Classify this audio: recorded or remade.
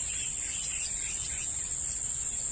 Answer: recorded